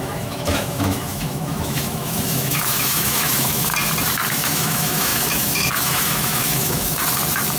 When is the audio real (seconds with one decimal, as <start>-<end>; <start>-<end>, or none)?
3.7-4.3; 7.0-7.6